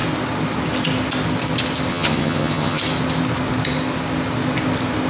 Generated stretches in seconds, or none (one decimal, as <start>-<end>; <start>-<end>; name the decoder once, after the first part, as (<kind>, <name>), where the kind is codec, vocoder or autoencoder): 1.9-2.8 (vocoder, HiFi-GAN)